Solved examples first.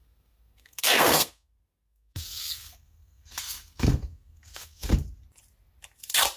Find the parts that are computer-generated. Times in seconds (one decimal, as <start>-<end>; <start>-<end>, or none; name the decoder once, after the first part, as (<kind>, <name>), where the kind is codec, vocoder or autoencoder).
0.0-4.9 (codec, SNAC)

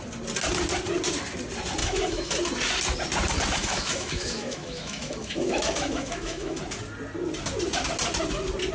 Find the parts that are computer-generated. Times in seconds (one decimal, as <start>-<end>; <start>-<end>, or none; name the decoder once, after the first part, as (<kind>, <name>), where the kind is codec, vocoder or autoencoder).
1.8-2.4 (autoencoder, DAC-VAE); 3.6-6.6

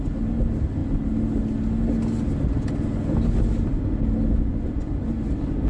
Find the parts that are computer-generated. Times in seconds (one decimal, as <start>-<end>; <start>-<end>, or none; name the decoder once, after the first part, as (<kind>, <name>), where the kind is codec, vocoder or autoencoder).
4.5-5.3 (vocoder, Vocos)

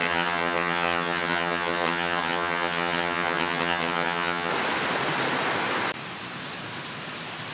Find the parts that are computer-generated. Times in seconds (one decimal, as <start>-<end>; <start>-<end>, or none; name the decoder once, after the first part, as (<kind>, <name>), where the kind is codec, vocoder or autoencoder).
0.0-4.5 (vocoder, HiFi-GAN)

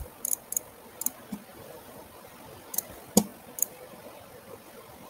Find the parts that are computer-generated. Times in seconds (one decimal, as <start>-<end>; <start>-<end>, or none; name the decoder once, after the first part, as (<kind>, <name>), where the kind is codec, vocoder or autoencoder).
1.5-2.0 (vocoder, BigVGAN v2)

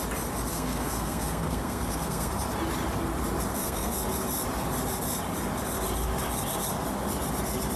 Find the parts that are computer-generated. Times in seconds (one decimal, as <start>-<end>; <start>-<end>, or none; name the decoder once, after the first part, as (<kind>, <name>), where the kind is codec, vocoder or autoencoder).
0.5-2.3 (codec, SNAC); 3.5-4.0

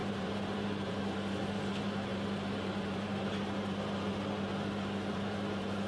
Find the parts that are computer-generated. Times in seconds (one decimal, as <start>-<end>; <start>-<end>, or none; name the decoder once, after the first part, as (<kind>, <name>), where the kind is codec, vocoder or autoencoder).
0.0-5.9 (vocoder, BigVGAN v2)